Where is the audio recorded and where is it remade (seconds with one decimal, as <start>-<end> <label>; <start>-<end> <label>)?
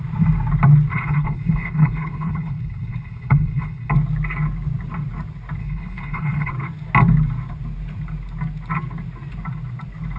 0.0-0.9 recorded; 0.9-3.9 remade; 3.9-5.6 recorded; 5.6-6.5 remade; 6.5-10.2 recorded